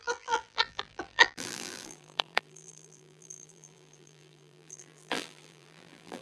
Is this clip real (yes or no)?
no